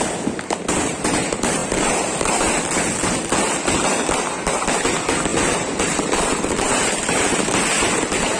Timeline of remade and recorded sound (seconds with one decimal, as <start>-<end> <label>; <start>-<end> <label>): 0.0-5.3 recorded; 5.3-7.6 remade; 7.6-8.4 recorded